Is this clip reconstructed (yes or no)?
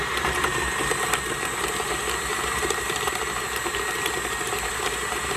yes